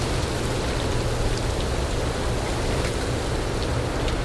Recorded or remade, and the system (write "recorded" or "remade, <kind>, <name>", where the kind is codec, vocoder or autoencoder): recorded